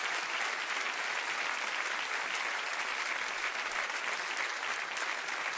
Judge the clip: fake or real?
real